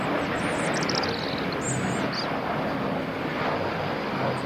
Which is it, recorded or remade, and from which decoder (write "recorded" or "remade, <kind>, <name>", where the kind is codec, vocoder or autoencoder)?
recorded